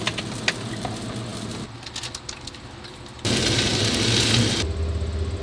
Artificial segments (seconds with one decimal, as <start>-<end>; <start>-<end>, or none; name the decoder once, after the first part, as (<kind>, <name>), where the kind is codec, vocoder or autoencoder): none